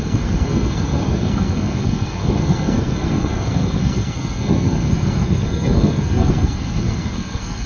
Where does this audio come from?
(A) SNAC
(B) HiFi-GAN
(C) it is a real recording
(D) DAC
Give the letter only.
A